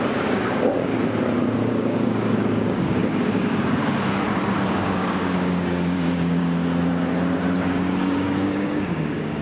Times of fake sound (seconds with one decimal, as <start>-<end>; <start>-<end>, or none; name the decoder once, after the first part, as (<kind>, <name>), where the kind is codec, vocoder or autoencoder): 0.0-0.9 (codec, DAC); 1.7-3.6; 4.7-6.4; 7.6-9.4

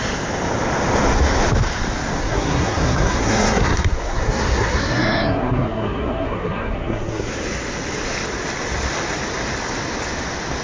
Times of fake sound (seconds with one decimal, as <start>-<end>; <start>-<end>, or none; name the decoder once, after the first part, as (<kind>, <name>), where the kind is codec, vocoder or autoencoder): 2.2-7.4 (codec, SNAC)

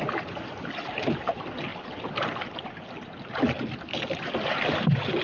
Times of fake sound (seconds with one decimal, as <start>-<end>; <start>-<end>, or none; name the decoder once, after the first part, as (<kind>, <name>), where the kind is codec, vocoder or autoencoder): 1.7-2.7 (vocoder, BigVGAN v2)

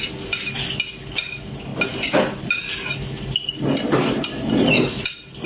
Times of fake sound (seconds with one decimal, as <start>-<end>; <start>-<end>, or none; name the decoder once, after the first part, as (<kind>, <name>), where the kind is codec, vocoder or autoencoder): none

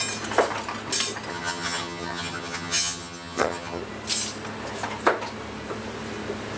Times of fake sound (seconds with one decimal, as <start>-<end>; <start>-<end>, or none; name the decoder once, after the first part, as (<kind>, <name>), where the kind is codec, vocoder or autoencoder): 1.3-3.8 (vocoder, HiFi-GAN)

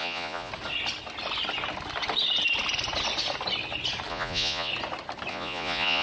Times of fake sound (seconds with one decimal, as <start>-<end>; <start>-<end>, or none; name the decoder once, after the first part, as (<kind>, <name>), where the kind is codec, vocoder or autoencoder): 0.0-0.5 (vocoder, Vocos); 4.1-4.7; 5.3-6.0